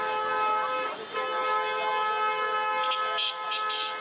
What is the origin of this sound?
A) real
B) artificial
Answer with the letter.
A